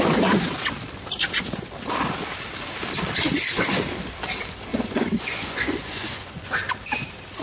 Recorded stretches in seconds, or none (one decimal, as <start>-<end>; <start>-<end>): 0.0-4.7; 6.5-7.4